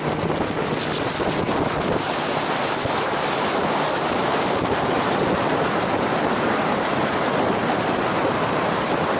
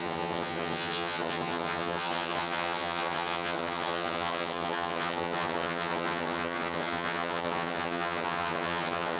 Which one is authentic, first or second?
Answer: first